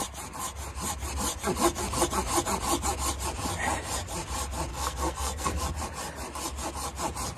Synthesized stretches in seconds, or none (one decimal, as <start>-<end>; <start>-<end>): 4.7-5.6